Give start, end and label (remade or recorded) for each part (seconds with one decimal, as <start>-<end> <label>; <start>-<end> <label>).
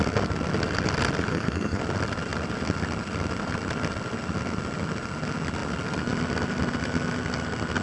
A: 0.0-1.3 recorded; 1.3-1.8 remade; 1.8-7.8 recorded